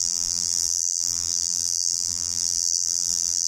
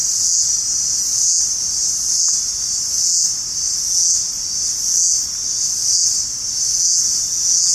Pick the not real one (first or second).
first